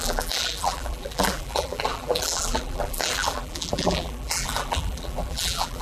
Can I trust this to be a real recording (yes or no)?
no